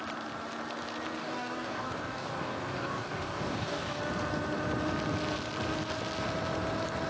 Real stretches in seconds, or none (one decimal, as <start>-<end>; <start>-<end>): 0.0-1.2; 4.0-7.1